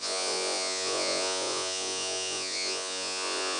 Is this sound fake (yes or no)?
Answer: yes